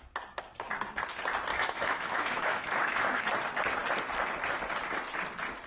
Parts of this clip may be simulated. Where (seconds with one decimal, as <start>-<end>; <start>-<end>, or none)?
1.5-3.2